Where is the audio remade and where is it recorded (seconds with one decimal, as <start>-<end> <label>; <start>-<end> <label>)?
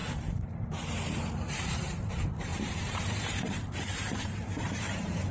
0.0-2.1 remade; 2.1-2.5 recorded; 2.5-5.3 remade